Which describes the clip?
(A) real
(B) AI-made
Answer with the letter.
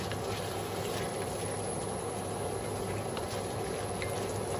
A